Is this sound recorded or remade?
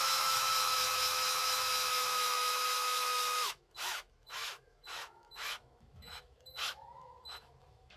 remade